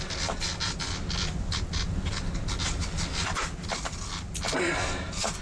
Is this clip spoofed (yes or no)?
no